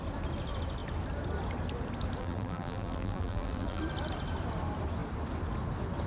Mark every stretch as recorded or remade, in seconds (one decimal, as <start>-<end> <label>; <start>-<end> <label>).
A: 0.0-2.2 recorded; 2.2-3.8 remade; 3.8-6.1 recorded